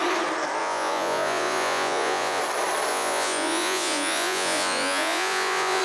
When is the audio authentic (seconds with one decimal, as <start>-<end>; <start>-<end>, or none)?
0.0-0.6; 2.4-2.9